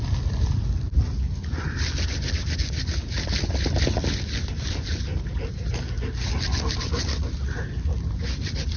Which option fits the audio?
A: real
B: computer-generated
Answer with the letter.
A